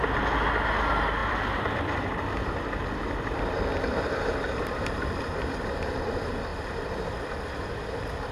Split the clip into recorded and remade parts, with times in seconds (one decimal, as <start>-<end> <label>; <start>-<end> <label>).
0.0-1.2 recorded; 1.2-4.8 remade; 4.8-8.3 recorded